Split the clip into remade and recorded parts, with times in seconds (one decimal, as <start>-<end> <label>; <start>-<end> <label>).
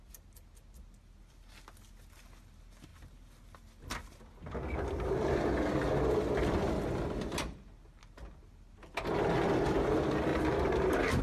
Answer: 0.0-10.3 recorded; 10.3-11.2 remade